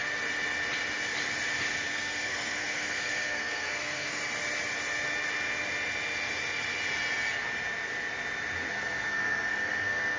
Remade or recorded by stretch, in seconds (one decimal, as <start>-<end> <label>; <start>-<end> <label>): 0.0-1.9 recorded; 1.9-4.2 remade; 4.2-8.7 recorded; 8.7-10.2 remade